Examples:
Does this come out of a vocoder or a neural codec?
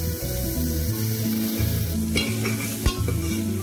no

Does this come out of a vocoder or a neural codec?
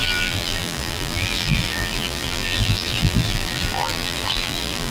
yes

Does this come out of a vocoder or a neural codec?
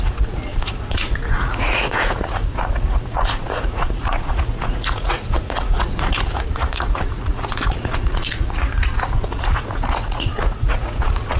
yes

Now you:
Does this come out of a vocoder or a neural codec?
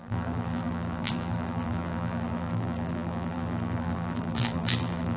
yes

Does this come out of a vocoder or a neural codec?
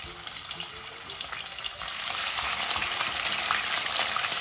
no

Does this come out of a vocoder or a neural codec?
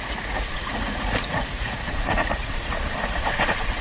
yes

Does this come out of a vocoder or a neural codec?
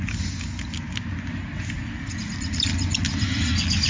no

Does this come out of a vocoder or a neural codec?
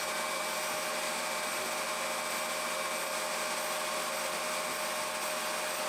no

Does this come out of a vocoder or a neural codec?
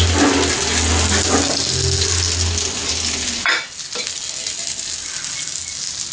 no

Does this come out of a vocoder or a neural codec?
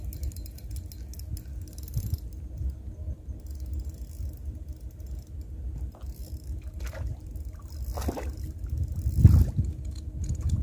no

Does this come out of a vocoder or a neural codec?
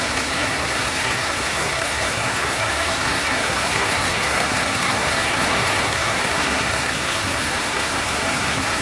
yes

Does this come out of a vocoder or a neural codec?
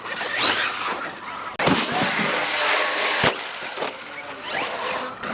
no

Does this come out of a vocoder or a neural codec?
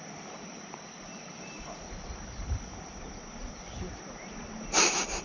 yes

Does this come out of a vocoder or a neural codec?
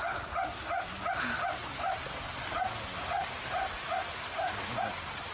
no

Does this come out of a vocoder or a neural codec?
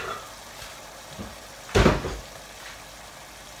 no